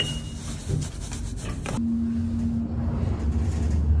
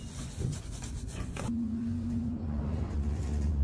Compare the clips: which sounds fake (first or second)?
second